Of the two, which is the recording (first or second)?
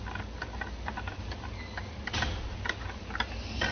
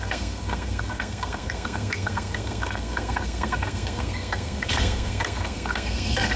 first